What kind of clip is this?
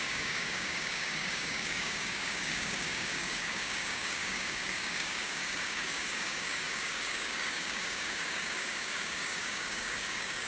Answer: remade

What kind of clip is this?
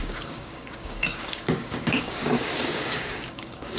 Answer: remade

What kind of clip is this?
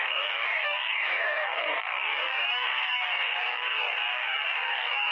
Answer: remade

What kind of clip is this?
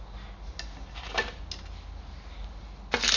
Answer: recorded